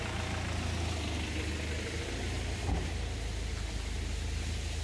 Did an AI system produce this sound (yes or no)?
no